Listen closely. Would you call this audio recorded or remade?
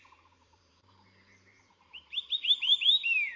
remade